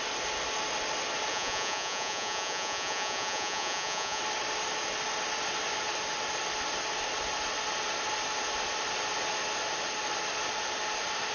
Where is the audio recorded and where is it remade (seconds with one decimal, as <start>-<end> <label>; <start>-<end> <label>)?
0.0-1.3 recorded; 1.3-4.2 remade; 4.2-11.3 recorded